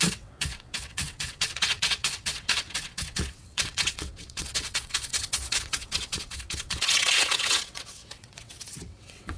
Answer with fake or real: fake